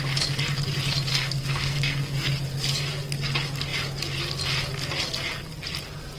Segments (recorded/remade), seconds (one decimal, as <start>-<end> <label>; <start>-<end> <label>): 0.0-1.1 recorded; 1.1-2.4 remade; 2.4-6.2 recorded